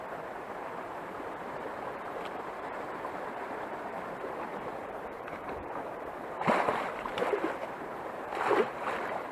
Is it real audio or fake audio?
fake